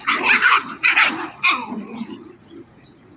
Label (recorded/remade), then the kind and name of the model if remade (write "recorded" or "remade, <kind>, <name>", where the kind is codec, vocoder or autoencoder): remade, vocoder, Vocos